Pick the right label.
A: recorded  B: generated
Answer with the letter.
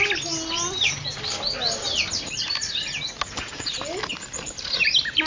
A